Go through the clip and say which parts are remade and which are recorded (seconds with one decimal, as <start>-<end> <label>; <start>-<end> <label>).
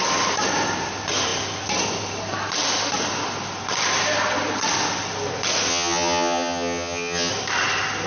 0.0-5.7 recorded; 5.7-7.3 remade; 7.3-8.1 recorded